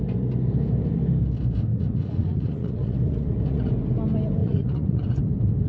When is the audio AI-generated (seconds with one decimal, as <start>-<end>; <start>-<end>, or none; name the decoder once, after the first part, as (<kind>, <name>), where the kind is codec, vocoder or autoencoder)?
1.7-3.7 (vocoder, Vocos); 4.4-5.2